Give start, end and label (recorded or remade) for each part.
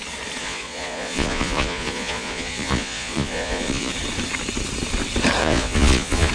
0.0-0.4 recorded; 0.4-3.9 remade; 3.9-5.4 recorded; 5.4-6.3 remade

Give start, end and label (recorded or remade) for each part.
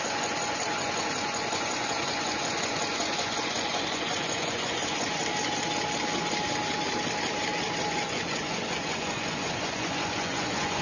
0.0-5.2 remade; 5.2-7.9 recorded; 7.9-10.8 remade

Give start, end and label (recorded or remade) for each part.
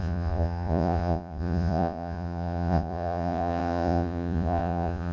0.0-5.1 remade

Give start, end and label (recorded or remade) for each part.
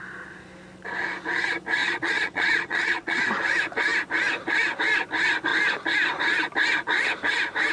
0.0-1.8 recorded; 1.8-3.2 remade; 3.2-7.7 recorded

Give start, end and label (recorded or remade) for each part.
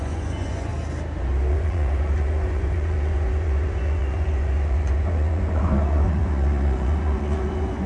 0.0-0.7 remade; 0.7-1.5 recorded; 1.5-7.9 remade